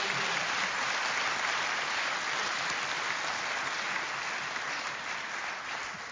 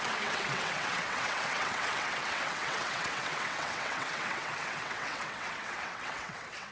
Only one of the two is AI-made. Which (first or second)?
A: second